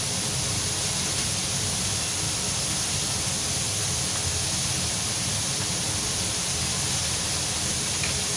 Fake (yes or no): no